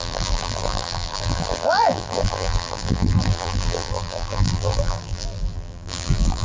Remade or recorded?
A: remade